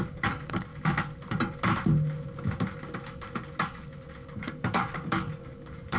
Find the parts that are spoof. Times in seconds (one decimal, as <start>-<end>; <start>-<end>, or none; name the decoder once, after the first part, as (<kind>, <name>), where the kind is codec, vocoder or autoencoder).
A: 0.0-0.7 (codec, DAC); 4.3-6.0